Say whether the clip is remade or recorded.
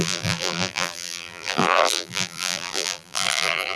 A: remade